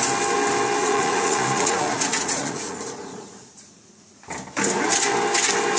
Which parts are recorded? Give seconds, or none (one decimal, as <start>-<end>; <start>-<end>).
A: 0.0-0.8; 4.3-5.8